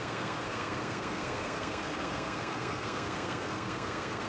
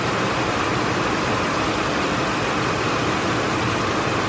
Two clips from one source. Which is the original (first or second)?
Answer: second